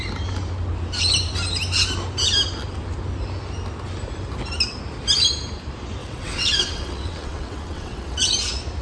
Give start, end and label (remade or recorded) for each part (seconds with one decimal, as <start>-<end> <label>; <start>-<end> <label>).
0.0-6.0 recorded; 6.0-8.3 remade; 8.3-8.8 recorded